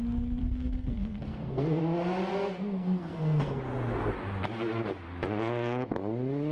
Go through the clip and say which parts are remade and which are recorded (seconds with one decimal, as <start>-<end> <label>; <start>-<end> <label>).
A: 0.0-0.4 recorded; 0.4-1.8 remade; 1.8-2.3 recorded; 2.3-3.6 remade; 3.6-6.5 recorded

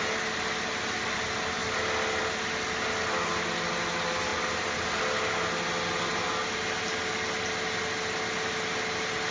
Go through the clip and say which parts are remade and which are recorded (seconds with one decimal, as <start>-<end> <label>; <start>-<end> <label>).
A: 0.0-9.3 recorded

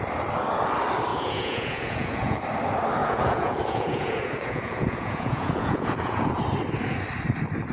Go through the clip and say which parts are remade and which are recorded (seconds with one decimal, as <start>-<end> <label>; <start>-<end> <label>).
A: 0.0-1.1 recorded; 1.1-2.4 remade; 2.4-3.0 recorded; 3.0-6.4 remade; 6.4-7.7 recorded

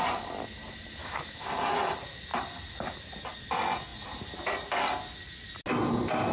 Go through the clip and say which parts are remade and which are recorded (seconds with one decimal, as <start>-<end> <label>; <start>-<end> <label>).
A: 0.0-1.0 recorded; 1.0-1.5 remade; 1.5-6.3 recorded

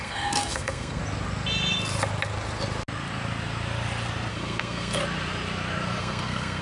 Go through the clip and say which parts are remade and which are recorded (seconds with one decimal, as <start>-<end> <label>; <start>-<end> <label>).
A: 0.0-1.0 remade; 1.0-4.3 recorded; 4.3-5.0 remade; 5.0-6.0 recorded; 6.0-6.6 remade

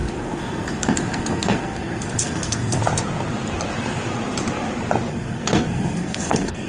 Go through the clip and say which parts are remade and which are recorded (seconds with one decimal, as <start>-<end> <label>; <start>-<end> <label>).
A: 0.0-2.8 remade; 2.8-5.1 recorded; 5.1-6.7 remade

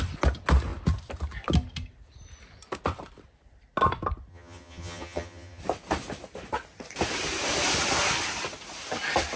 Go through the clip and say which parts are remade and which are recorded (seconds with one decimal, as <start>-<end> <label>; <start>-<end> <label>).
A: 0.0-4.3 recorded; 4.3-5.6 remade; 5.6-9.4 recorded